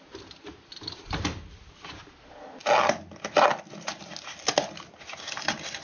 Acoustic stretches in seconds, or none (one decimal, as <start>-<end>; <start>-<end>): 0.0-0.7; 1.6-5.8